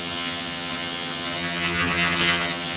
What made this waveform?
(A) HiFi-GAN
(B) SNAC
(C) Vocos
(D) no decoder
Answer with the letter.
A